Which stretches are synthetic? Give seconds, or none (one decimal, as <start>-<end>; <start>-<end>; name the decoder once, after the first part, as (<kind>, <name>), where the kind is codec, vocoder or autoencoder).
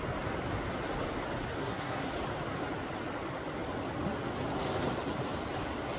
1.6-2.1 (codec, SNAC)